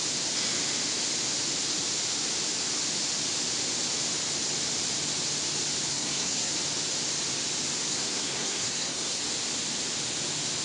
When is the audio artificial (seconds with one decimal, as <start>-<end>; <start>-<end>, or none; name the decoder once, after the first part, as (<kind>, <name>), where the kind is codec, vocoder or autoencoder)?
5.9-6.5 (codec, SNAC); 7.9-9.2